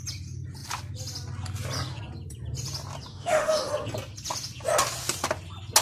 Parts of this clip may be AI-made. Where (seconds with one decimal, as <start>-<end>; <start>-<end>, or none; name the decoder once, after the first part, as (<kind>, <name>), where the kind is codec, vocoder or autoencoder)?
3.1-3.7 (autoencoder, DAC-VAE)